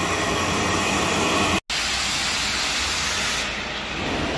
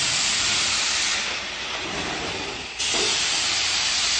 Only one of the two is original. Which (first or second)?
first